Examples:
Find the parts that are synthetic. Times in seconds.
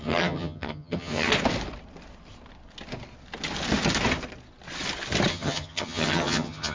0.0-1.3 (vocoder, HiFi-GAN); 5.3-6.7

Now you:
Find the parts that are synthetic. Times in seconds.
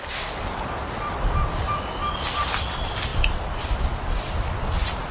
none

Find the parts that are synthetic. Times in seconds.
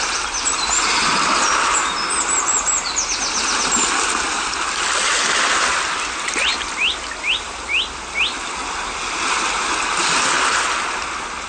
none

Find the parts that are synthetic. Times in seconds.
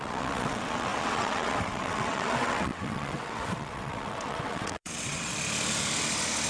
0.0-5.3 (vocoder, WaveNeXt)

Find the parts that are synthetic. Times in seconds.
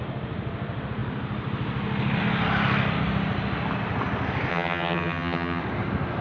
4.5-5.6 (vocoder, HiFi-GAN)